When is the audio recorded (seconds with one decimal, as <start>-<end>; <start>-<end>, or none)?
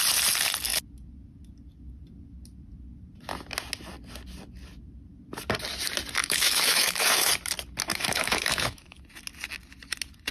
0.0-6.2; 7.3-7.9; 9.0-10.3